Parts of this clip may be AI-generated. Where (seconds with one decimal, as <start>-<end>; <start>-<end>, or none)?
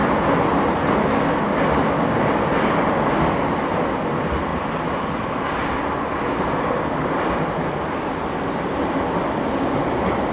none